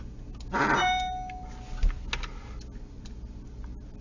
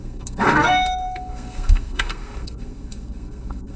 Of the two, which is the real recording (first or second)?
first